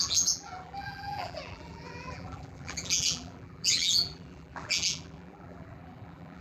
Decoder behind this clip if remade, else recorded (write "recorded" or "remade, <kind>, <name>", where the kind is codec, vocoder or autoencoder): remade, vocoder, BigVGAN v2